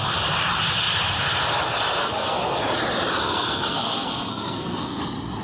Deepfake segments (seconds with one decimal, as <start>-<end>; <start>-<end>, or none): 2.0-2.6; 3.2-5.0